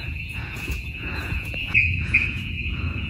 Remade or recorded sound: remade